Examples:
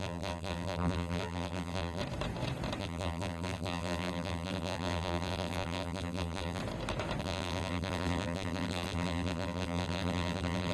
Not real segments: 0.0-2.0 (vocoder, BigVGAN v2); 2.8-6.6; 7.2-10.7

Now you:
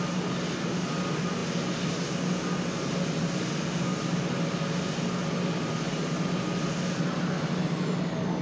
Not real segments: none

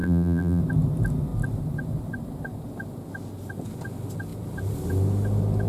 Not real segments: 0.0-0.6 (vocoder, BigVGAN v2)